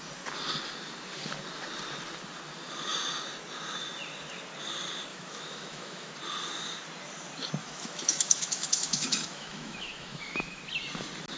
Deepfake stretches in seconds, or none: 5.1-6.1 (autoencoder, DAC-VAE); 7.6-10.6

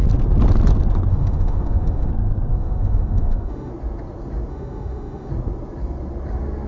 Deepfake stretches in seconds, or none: 1.1-2.1 (autoencoder, DAC-VAE); 2.5-3.7; 4.5-5.3

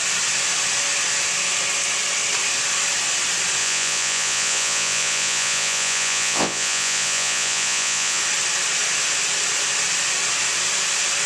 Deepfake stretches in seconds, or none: 3.6-8.2 (vocoder, Vocos)

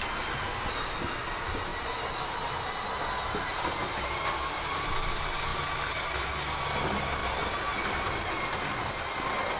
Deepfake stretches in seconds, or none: none

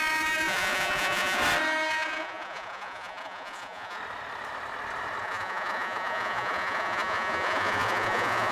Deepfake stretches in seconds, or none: 0.0-1.4 (vocoder, Vocos); 1.9-4.0; 5.2-8.5

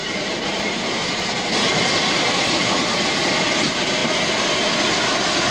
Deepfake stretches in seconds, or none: 0.0-4.0 (vocoder, BigVGAN v2); 5.0-5.5

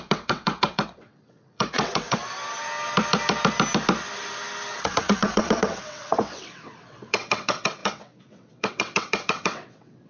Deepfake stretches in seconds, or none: 0.0-2.2 (vocoder, WaveNeXt); 4.7-10.1

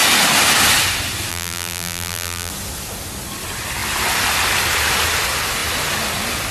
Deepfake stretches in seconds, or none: 1.3-2.5 (vocoder, BigVGAN v2)